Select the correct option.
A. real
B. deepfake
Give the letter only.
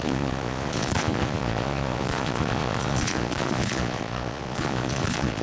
B